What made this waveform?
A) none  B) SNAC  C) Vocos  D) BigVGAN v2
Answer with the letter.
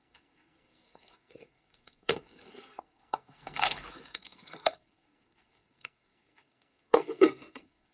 B